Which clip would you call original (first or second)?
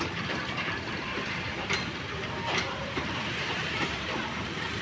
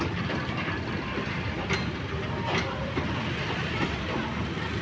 second